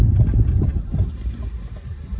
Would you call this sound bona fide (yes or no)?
yes